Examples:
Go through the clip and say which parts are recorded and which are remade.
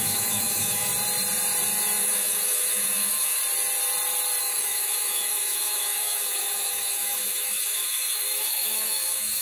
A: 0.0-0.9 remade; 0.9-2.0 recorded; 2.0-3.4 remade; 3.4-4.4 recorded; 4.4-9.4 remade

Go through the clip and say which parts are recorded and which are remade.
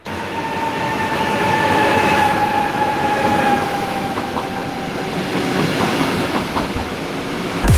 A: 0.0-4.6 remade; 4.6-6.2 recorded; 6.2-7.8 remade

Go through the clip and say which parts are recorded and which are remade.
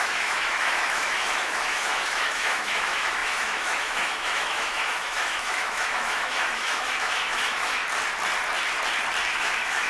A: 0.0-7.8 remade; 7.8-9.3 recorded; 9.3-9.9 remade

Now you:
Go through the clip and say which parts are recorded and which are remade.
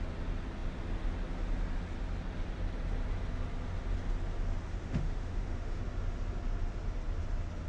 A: 0.0-4.8 recorded; 4.8-5.8 remade; 5.8-7.7 recorded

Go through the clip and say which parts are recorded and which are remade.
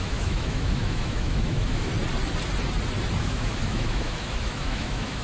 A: 0.0-1.9 remade; 1.9-3.2 recorded; 3.2-5.2 remade